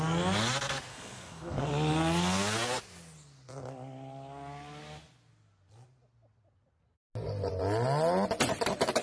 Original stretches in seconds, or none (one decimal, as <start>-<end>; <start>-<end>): 0.0-0.9; 1.7-9.0